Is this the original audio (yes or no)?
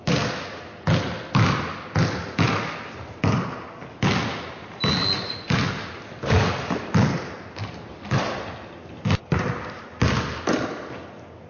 yes